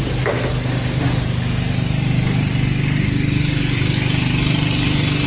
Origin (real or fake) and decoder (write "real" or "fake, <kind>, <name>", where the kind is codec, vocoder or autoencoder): real